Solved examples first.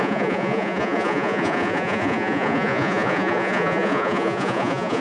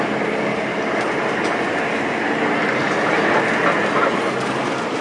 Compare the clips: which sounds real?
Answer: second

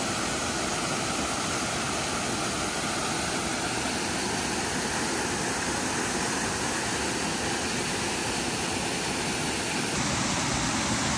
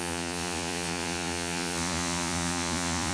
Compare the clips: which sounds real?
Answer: first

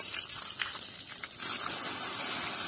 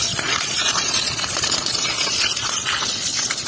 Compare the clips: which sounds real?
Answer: first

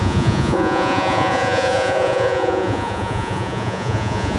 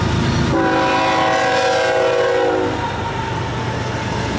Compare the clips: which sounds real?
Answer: second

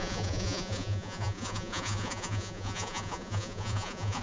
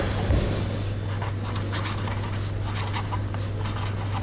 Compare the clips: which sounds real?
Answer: second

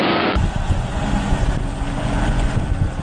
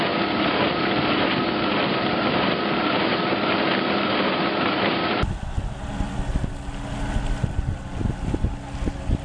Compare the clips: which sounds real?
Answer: second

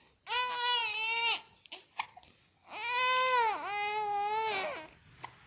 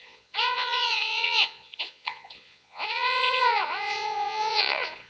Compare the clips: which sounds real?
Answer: first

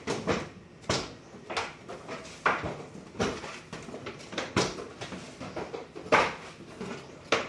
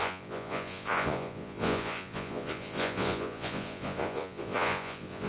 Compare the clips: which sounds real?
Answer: first